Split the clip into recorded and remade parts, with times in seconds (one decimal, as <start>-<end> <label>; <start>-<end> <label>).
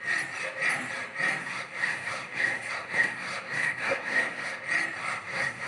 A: 0.0-1.4 recorded; 1.4-4.6 remade; 4.6-5.0 recorded; 5.0-5.7 remade